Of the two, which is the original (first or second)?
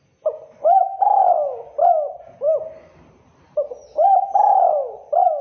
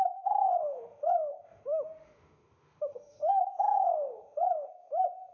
first